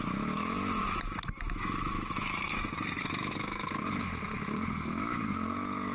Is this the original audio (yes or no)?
no